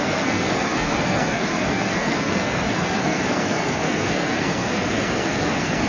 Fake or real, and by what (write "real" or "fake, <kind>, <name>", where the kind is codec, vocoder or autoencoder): fake, codec, SNAC